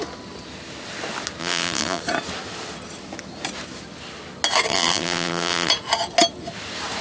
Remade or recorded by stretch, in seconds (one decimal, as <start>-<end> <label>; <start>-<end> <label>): 0.0-1.4 recorded; 1.4-2.0 remade; 2.0-4.7 recorded; 4.7-5.7 remade; 5.7-7.0 recorded